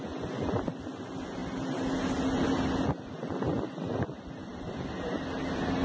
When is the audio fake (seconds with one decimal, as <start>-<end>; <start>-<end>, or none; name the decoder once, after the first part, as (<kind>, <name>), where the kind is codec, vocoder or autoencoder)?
none